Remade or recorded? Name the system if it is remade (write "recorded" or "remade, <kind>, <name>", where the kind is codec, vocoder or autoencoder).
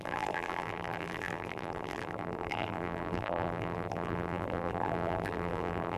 remade, vocoder, BigVGAN v2